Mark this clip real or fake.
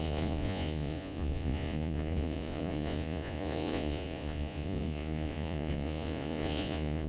fake